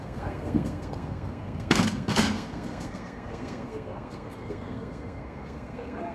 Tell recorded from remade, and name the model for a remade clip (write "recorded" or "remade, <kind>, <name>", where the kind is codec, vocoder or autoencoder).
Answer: remade, codec, SNAC